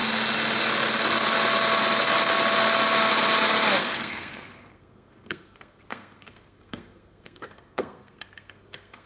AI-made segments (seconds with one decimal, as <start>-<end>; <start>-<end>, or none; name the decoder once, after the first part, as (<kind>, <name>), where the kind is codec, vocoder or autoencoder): 3.8-9.1 (codec, SNAC)